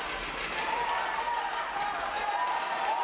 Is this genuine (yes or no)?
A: yes